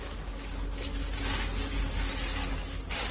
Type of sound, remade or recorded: recorded